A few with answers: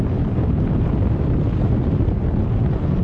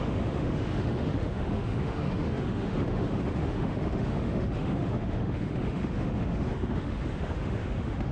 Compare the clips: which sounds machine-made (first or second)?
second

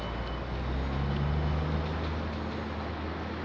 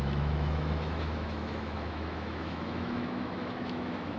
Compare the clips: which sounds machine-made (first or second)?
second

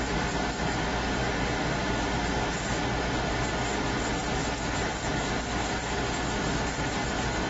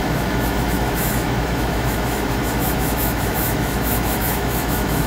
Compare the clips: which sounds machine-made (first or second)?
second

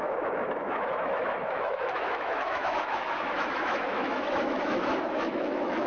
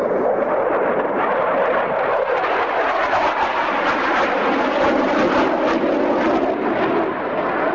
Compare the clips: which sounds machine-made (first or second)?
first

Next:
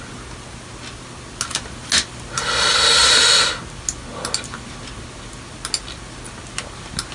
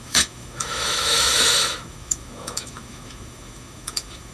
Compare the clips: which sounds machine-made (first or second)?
second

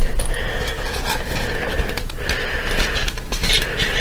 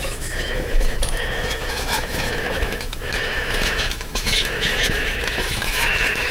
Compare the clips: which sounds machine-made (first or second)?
second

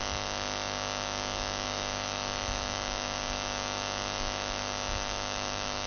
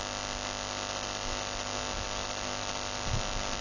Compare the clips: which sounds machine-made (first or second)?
first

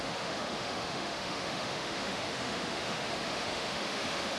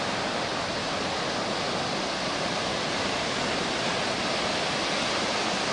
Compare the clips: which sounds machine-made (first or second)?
first